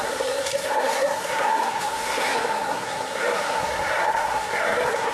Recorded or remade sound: remade